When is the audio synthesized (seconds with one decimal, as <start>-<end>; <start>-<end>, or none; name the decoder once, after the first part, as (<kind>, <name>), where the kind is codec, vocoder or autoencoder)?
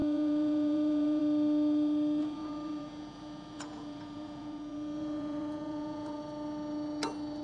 0.0-1.2 (vocoder, Vocos); 2.2-6.2